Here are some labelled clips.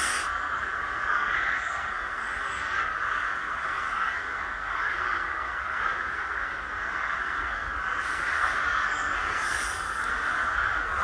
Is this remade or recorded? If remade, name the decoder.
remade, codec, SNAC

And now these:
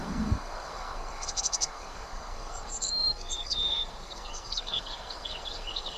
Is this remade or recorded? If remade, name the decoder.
remade, codec, SNAC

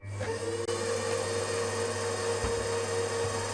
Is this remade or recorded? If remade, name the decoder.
recorded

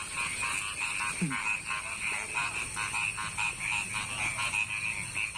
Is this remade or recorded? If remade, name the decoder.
recorded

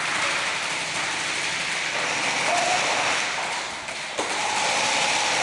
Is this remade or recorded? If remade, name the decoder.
recorded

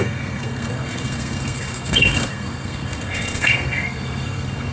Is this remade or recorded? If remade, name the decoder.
remade, codec, SNAC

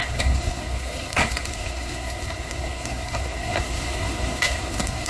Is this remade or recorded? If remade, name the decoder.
remade, codec, SNAC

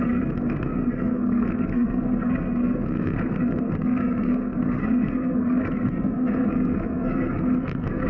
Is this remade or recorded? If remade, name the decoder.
remade, codec, SNAC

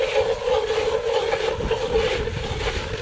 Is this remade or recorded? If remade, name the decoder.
recorded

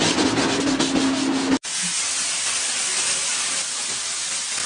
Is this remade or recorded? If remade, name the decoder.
recorded